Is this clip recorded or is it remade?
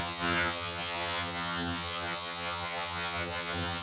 remade